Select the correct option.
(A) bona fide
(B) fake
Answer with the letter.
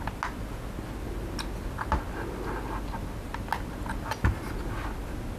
A